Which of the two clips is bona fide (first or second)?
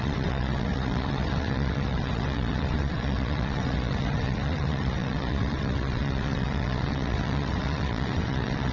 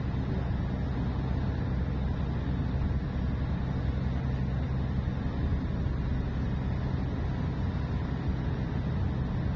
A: second